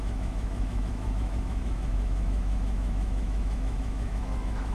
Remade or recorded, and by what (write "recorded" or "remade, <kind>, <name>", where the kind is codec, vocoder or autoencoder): remade, autoencoder, DAC-VAE